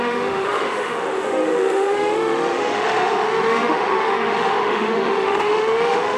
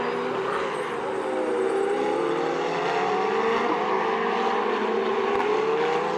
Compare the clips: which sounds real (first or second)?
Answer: second